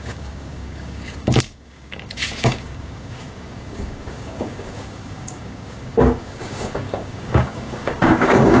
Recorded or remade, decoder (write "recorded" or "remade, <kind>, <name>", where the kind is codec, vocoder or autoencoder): remade, codec, DAC